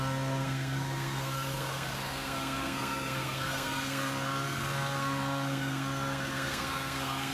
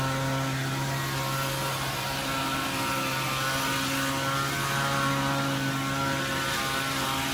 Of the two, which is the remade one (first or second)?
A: first